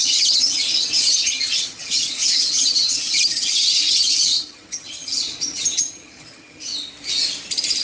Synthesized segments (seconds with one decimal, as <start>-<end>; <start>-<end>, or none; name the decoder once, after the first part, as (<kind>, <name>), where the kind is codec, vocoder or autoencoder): 0.0-6.7 (vocoder, HiFi-GAN)